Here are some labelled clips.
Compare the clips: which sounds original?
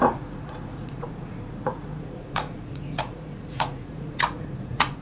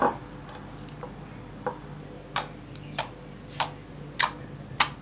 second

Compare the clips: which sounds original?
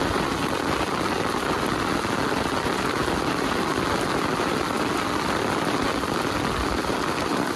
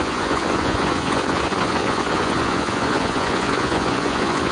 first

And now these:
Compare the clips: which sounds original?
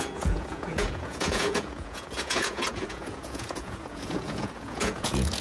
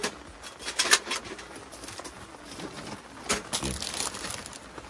second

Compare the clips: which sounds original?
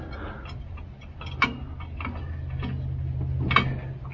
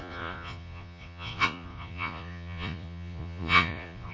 first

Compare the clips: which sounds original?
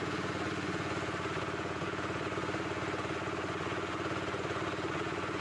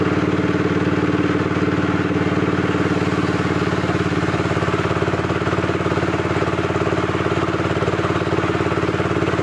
second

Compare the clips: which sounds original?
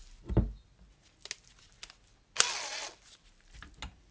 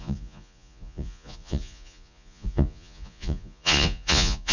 first